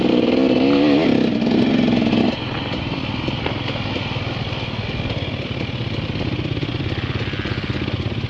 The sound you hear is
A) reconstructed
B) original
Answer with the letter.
B